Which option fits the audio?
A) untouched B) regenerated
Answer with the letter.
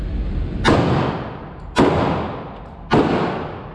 A